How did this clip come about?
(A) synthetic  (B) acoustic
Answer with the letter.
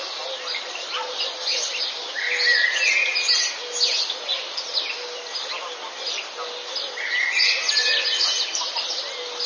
B